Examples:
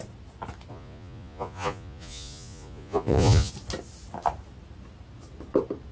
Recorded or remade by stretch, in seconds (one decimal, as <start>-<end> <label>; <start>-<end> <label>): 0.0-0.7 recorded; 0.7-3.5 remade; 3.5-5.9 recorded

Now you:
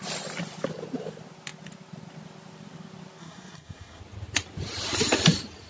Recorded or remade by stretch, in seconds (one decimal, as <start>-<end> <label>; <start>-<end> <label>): 0.0-3.2 recorded; 3.2-4.0 remade; 4.0-5.7 recorded

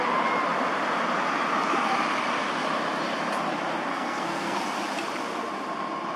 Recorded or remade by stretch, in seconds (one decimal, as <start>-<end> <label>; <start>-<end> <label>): 0.0-3.9 recorded; 3.9-4.6 remade; 4.6-6.2 recorded

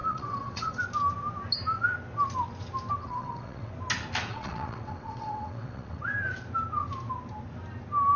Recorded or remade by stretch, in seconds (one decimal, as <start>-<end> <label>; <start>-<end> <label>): 0.0-0.8 remade; 0.8-3.0 recorded; 3.0-3.7 remade; 3.7-4.3 recorded; 4.3-6.0 remade; 6.0-8.2 recorded

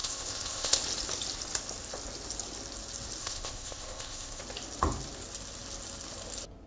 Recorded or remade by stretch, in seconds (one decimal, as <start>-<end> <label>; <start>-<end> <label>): 0.0-0.8 remade; 0.8-3.2 recorded; 3.2-4.4 remade; 4.4-6.7 recorded